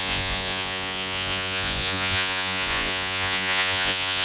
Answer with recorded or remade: remade